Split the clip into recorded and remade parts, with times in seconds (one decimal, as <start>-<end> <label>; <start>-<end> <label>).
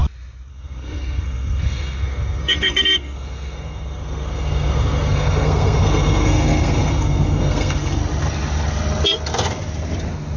0.0-0.5 recorded; 0.5-8.0 remade; 8.0-10.4 recorded